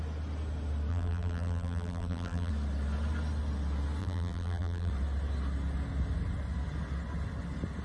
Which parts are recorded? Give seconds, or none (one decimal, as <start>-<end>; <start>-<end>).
0.0-0.9; 2.5-4.0; 4.9-7.8